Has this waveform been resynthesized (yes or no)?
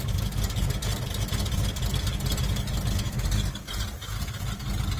no